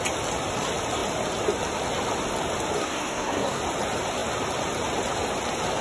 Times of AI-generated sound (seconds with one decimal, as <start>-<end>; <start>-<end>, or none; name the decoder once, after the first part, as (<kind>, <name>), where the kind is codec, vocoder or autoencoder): 2.8-3.6 (codec, SNAC)